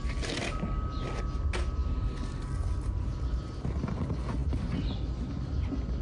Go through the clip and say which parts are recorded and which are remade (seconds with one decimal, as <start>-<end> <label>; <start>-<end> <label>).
0.0-6.0 recorded